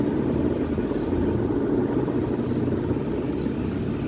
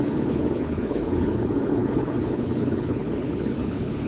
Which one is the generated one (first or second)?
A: second